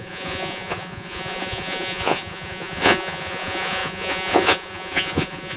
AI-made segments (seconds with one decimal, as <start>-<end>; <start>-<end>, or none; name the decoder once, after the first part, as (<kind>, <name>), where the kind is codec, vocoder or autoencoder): 0.0-5.6 (vocoder, Vocos)